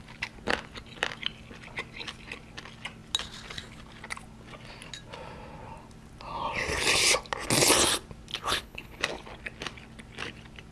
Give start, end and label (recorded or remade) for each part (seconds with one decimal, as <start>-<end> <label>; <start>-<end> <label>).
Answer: 0.0-8.3 recorded; 8.3-9.0 remade; 9.0-10.7 recorded